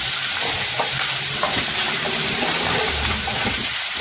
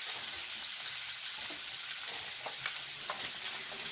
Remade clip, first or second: first